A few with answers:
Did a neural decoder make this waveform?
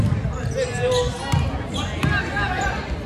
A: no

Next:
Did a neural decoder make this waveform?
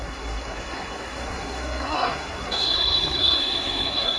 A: yes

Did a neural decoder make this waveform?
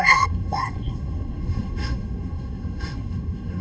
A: yes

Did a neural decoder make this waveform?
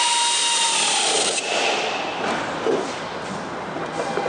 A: no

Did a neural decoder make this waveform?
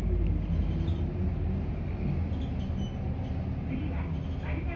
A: no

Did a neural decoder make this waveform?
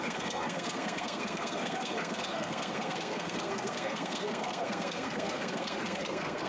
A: yes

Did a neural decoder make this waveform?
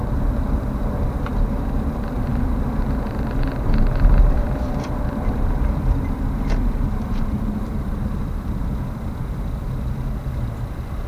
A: yes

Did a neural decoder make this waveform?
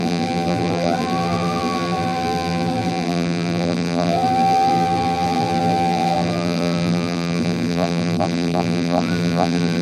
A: yes